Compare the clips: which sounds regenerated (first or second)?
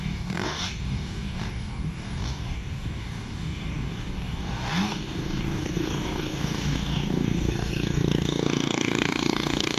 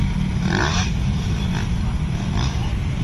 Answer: first